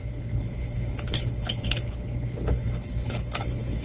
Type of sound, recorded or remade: remade